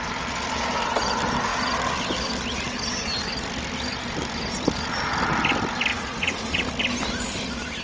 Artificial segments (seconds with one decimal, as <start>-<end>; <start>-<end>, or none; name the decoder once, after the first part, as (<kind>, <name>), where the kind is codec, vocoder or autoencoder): 5.9-6.7 (vocoder, Vocos)